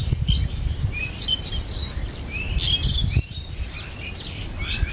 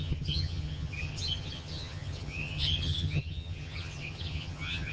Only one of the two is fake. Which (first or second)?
second